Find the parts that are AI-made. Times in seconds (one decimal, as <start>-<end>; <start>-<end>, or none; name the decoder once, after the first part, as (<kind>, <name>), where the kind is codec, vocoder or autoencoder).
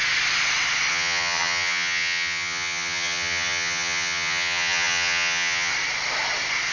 0.9-5.7 (vocoder, HiFi-GAN)